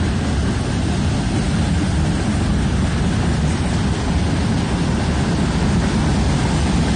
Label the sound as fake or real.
real